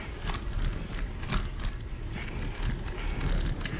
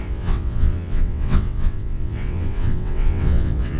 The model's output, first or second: second